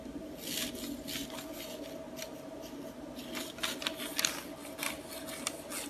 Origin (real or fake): real